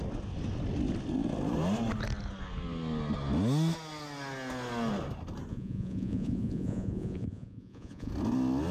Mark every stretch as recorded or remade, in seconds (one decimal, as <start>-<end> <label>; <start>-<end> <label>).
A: 0.0-5.5 recorded; 5.5-8.1 remade; 8.1-8.7 recorded